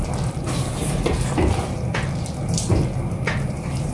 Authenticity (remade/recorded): recorded